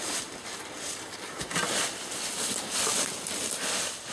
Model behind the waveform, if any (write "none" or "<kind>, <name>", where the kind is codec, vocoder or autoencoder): none